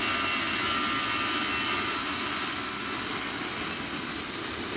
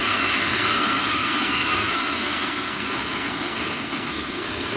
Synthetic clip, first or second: second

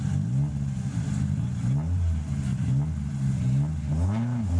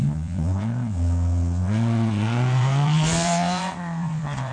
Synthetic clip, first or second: second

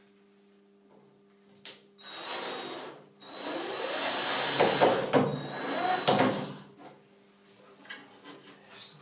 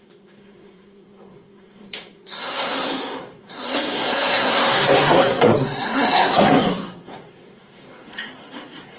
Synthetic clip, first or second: second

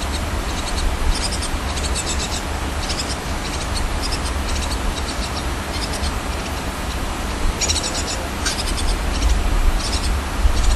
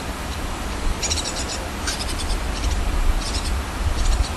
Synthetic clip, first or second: second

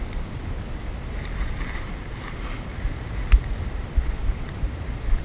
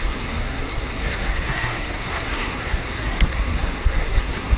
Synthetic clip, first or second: second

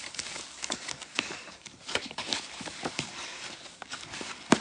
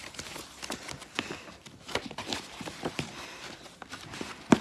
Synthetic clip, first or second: first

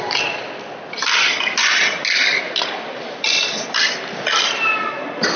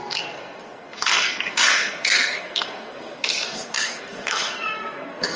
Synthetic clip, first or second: second